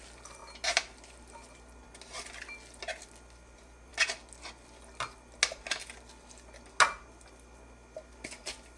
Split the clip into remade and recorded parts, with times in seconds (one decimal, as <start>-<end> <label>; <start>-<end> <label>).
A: 0.0-8.8 recorded